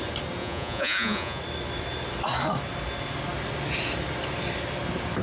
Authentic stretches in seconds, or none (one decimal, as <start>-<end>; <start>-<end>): 0.0-0.4; 1.4-5.2